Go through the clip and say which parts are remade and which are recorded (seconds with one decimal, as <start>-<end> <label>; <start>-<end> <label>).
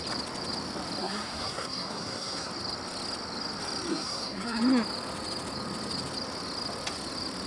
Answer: 0.0-1.0 recorded; 1.0-2.5 remade; 2.5-3.9 recorded; 3.9-4.6 remade; 4.6-7.5 recorded